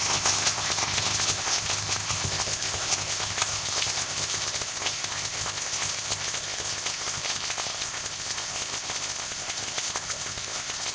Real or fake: fake